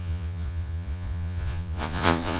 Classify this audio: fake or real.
fake